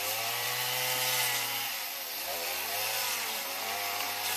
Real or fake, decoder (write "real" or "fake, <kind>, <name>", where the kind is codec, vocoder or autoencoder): fake, vocoder, BigVGAN v2